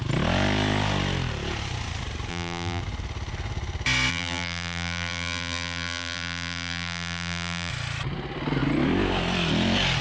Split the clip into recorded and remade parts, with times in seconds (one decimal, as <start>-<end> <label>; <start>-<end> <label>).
0.0-2.3 recorded; 2.3-2.8 remade; 2.8-4.1 recorded; 4.1-7.7 remade; 7.7-10.0 recorded